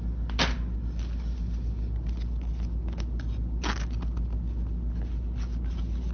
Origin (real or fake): real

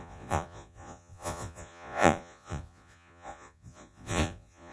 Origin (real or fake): fake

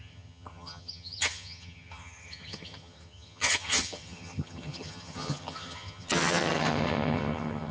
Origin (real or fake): fake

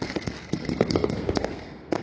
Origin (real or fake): fake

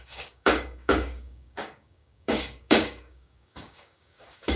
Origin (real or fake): fake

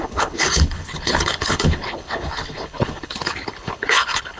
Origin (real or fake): fake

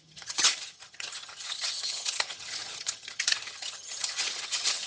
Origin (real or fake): fake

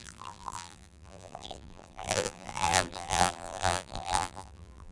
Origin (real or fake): fake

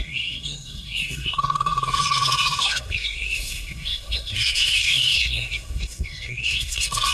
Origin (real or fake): fake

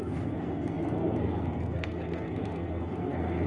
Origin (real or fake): fake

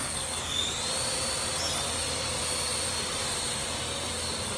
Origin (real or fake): real